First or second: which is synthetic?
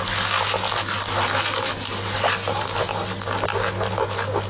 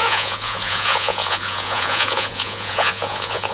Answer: second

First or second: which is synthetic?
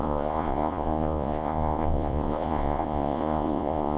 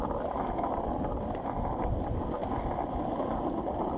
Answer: first